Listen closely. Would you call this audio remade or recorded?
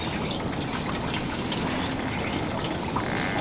recorded